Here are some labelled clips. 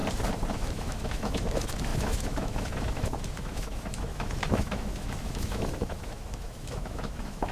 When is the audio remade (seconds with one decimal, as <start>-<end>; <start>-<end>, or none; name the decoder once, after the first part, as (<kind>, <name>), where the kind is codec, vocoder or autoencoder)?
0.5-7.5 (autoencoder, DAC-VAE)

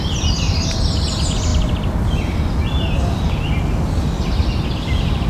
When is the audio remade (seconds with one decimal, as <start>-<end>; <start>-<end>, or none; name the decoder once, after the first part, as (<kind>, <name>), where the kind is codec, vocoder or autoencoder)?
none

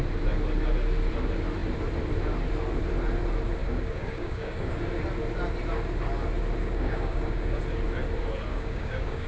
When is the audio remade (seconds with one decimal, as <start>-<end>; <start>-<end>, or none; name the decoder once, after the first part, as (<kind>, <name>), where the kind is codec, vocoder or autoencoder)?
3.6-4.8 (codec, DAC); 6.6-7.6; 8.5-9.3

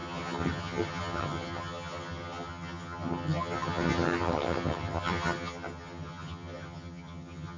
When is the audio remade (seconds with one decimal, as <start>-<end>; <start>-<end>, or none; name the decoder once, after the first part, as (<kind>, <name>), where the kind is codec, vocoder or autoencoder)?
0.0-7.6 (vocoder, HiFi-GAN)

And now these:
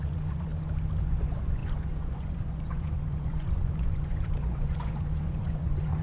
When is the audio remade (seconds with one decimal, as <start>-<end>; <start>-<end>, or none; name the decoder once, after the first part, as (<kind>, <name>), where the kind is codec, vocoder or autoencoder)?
0.0-0.5 (vocoder, Vocos); 1.0-6.0

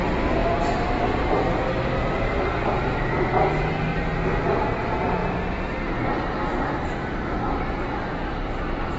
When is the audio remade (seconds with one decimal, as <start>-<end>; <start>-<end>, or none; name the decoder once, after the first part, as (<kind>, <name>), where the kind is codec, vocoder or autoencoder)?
none

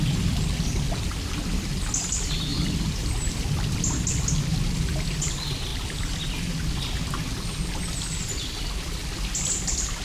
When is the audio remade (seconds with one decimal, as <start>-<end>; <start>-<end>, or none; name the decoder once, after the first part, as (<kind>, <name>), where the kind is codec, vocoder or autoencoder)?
2.5-3.3 (vocoder, BigVGAN v2)